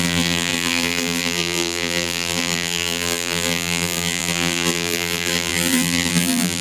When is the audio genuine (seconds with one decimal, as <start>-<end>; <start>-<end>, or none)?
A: none